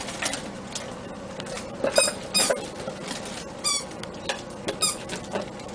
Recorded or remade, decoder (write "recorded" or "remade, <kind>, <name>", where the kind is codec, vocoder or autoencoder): recorded